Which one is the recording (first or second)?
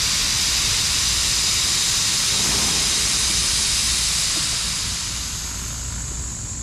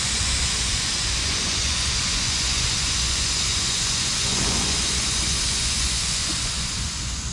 first